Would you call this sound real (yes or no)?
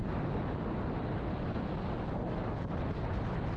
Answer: yes